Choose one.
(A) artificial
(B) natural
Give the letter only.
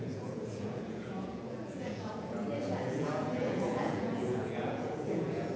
A